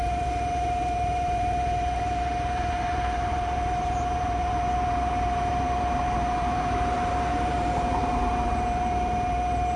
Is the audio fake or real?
fake